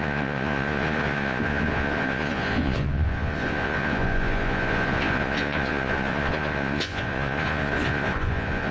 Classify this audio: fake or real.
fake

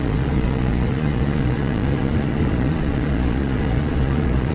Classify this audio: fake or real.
fake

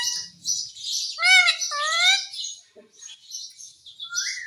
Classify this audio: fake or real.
real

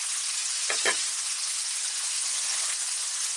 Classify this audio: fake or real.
fake